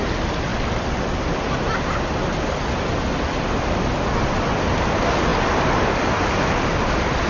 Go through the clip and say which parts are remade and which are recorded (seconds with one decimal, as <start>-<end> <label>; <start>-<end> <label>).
0.0-7.3 recorded